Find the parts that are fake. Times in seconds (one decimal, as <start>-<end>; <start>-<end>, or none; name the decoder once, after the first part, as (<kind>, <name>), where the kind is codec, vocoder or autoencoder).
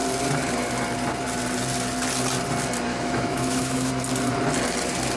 2.9-3.9 (autoencoder, DAC-VAE)